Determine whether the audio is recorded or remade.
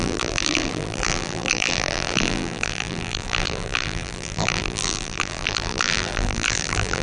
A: remade